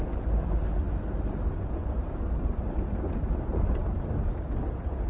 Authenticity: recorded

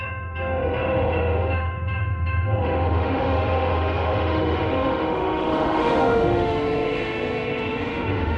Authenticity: remade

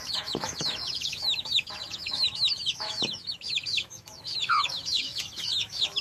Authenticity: remade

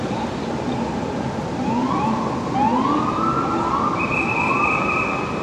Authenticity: recorded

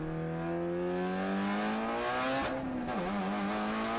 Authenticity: recorded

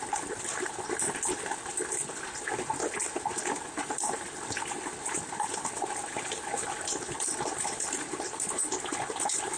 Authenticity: recorded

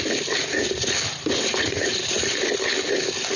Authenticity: recorded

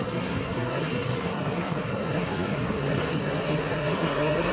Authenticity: remade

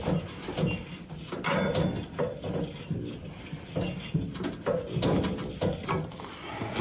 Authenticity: recorded